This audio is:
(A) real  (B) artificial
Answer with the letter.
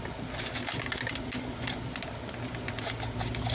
A